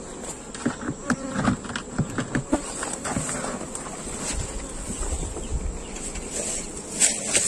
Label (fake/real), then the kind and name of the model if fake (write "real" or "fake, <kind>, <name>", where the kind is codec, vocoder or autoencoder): real